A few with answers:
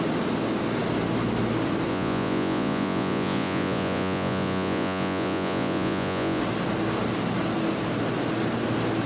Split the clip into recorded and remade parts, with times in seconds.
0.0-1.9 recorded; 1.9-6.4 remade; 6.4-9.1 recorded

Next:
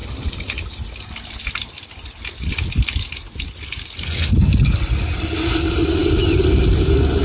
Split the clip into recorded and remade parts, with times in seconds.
0.0-7.2 recorded

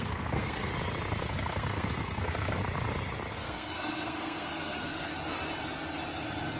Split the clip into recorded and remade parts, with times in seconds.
0.0-0.7 remade; 0.7-1.2 recorded; 1.2-2.6 remade; 2.6-3.3 recorded; 3.3-5.1 remade; 5.1-6.6 recorded

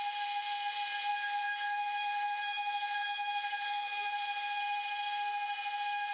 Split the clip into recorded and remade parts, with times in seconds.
0.0-1.1 recorded; 1.1-4.6 remade; 4.6-6.1 recorded

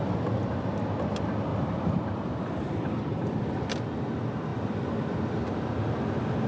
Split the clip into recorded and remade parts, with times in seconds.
0.0-1.5 recorded; 1.5-3.5 remade; 3.5-4.5 recorded; 4.5-5.4 remade; 5.4-6.5 recorded

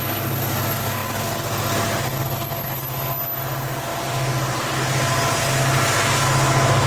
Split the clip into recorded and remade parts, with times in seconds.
0.0-3.9 recorded; 3.9-5.4 remade; 5.4-6.9 recorded

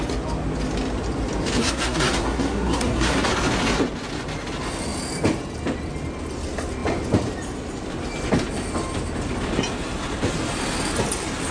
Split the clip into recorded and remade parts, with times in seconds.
0.0-1.6 recorded; 1.6-3.3 remade; 3.3-11.5 recorded

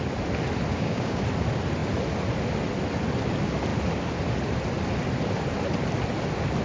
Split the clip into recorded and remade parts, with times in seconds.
0.0-0.7 recorded; 0.7-1.2 remade; 1.2-6.6 recorded